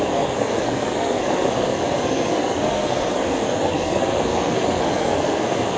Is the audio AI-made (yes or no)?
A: yes